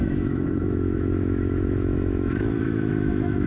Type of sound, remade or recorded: remade